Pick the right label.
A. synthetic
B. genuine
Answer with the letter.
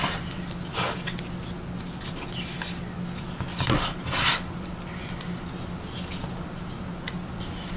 B